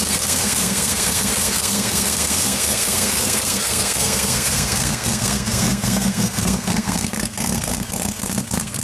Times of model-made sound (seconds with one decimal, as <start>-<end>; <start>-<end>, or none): 0.0-8.8